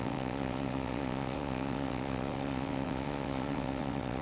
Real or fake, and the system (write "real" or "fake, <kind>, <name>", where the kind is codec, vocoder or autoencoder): fake, vocoder, WaveNeXt